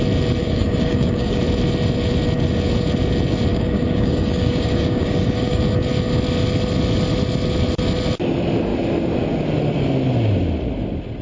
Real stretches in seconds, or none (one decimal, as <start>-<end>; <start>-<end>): 0.0-0.4; 1.4-3.5; 5.6-11.2